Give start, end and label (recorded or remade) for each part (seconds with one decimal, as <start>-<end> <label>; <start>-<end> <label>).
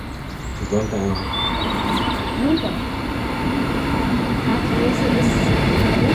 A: 0.0-0.5 remade; 0.5-1.1 recorded; 1.1-6.1 remade